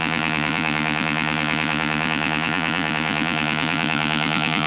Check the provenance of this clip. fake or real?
fake